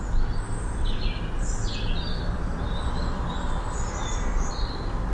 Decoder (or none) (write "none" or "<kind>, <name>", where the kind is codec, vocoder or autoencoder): none